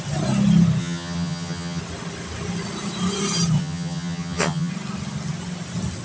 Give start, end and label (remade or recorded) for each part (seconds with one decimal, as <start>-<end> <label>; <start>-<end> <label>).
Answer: 0.0-0.8 recorded; 0.8-1.8 remade; 1.8-3.6 recorded; 3.6-4.7 remade; 4.7-6.0 recorded